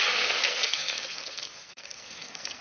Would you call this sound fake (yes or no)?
yes